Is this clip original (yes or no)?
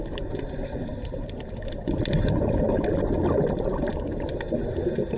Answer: yes